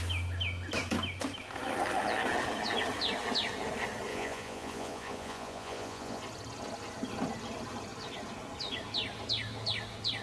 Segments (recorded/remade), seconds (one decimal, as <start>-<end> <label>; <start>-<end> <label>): 0.0-4.1 recorded; 4.1-6.2 remade; 6.2-10.2 recorded

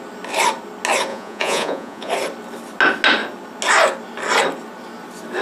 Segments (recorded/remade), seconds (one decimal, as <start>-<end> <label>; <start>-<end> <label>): 0.0-1.1 recorded; 1.1-2.1 remade; 2.1-5.4 recorded

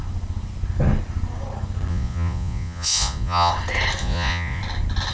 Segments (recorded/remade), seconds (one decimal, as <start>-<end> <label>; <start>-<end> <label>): 0.0-1.9 recorded; 1.9-3.5 remade; 3.5-4.0 recorded; 4.0-4.6 remade; 4.6-5.1 recorded

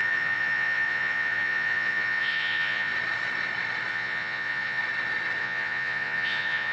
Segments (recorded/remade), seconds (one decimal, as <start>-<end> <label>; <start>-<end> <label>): 0.0-2.9 remade; 2.9-3.9 recorded; 3.9-4.8 remade; 4.8-5.4 recorded; 5.4-6.7 remade

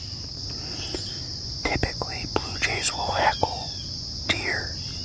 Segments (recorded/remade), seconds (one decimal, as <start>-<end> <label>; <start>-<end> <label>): 0.0-1.3 recorded; 1.3-4.2 remade; 4.2-5.0 recorded